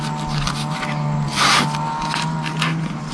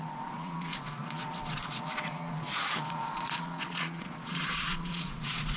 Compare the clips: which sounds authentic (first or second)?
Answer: first